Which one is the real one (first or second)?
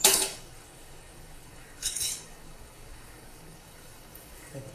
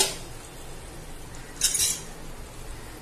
second